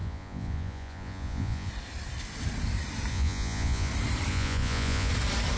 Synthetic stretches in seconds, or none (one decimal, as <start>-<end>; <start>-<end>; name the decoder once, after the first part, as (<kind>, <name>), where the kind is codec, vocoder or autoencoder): 0.0-1.7 (vocoder, Vocos); 3.1-3.9; 4.3-5.1